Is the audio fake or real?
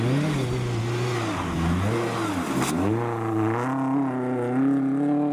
real